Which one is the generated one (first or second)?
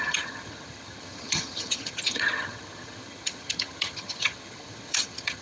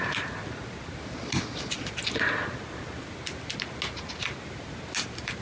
first